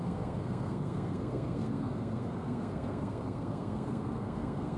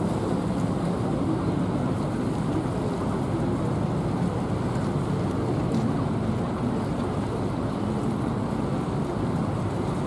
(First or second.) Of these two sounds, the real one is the second